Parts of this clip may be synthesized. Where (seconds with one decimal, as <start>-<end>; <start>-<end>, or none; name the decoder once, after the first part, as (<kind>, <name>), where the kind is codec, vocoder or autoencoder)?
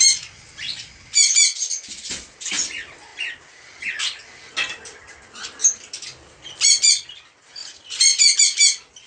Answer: none